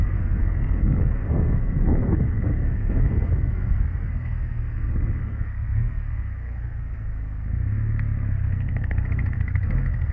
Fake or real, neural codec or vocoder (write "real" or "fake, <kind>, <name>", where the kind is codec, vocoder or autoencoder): fake, codec, SNAC